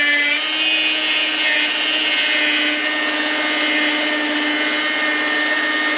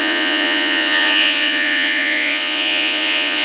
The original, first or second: first